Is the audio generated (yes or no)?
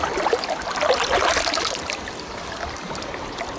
no